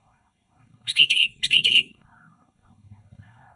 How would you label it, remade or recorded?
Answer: remade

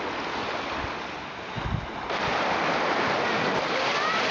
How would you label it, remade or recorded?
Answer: recorded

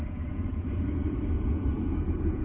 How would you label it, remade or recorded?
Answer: remade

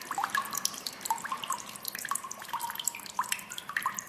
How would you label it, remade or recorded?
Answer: remade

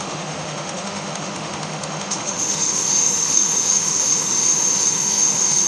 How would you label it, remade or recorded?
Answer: remade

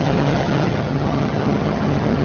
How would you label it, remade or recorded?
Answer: remade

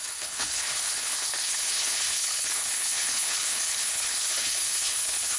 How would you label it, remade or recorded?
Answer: remade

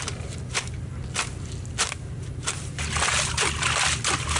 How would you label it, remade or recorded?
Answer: recorded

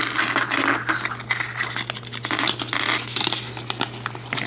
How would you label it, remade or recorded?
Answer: recorded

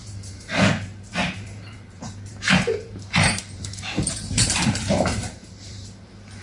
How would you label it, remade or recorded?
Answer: remade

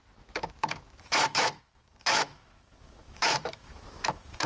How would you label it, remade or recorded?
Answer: remade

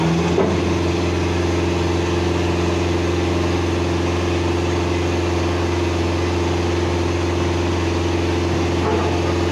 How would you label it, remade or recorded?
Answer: recorded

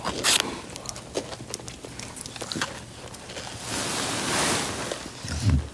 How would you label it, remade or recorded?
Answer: recorded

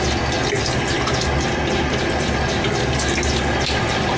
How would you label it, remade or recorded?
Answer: recorded